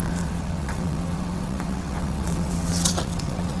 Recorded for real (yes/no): no